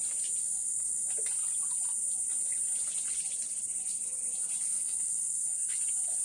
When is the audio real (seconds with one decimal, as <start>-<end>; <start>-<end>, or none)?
0.0-0.4; 1.1-4.7; 5.7-6.2